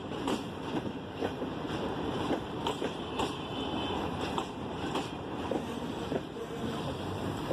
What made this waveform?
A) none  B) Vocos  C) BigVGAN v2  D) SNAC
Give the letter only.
C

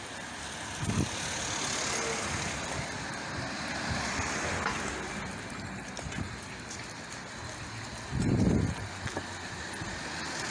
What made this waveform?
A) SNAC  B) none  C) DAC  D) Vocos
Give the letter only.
B